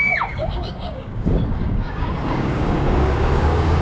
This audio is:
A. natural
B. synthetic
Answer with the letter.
B